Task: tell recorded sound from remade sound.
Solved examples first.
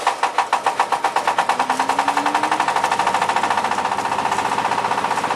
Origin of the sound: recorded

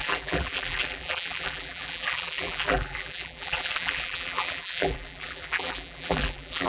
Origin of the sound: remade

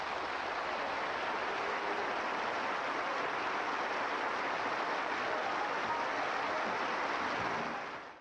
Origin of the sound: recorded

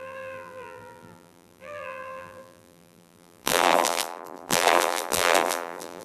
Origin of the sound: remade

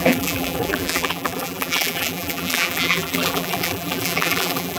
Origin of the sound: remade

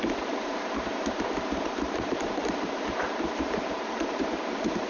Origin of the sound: remade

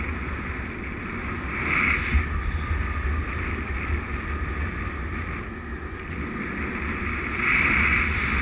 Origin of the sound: recorded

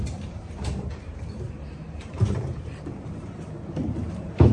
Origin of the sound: remade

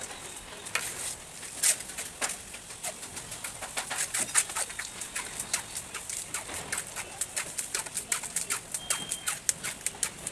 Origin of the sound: recorded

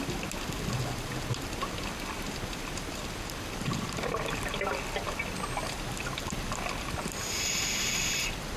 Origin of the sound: recorded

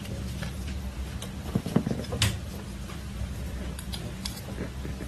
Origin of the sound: recorded